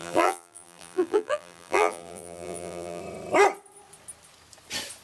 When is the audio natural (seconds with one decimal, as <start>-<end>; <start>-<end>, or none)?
3.0-5.0

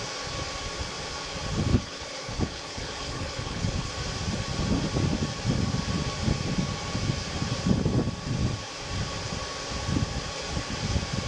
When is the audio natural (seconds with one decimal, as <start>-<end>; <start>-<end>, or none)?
0.0-1.7; 3.9-11.3

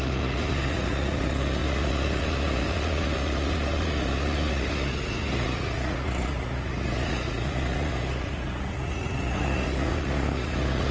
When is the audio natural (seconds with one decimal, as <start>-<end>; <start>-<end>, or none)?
none

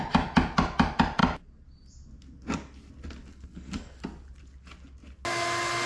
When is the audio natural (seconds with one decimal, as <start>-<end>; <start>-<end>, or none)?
0.0-3.3; 4.0-5.9

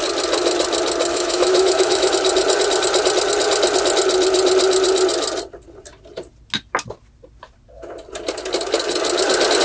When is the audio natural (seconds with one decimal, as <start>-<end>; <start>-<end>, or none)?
0.0-1.1; 2.1-9.6

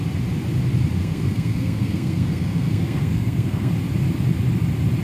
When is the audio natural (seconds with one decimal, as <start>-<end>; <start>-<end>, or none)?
0.0-1.0; 3.7-5.0

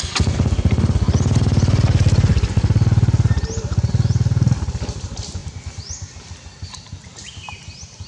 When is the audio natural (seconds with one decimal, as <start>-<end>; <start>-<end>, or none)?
0.0-8.1